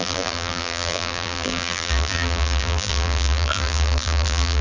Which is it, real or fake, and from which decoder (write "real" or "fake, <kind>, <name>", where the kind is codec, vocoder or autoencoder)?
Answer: fake, vocoder, BigVGAN v2